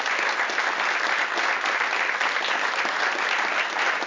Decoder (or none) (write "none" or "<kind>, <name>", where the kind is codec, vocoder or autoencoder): none